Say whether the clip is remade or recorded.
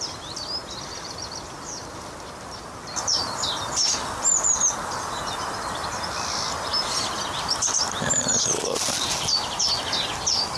recorded